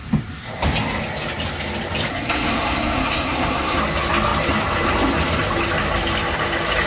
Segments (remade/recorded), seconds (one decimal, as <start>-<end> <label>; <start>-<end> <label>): 0.0-2.1 recorded; 2.1-3.8 remade; 3.8-6.9 recorded